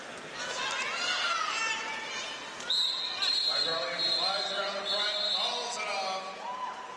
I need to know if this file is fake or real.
real